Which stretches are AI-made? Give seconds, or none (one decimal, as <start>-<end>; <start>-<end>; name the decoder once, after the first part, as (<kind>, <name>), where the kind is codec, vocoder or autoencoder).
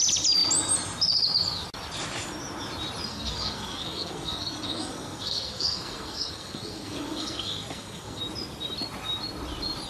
3.1-8.2 (codec, SNAC)